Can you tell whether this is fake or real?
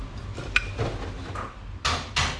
real